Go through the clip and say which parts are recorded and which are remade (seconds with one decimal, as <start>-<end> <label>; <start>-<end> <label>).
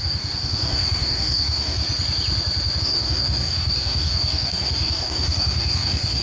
0.0-1.8 remade; 1.8-2.8 recorded; 2.8-6.2 remade